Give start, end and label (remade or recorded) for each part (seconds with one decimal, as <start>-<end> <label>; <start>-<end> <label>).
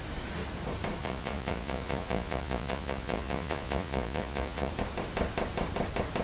0.0-1.0 recorded; 1.0-4.7 remade; 4.7-6.2 recorded